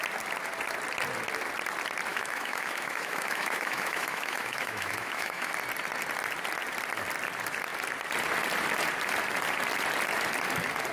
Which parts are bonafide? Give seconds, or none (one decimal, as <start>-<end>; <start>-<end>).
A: 0.0-2.1; 5.5-10.9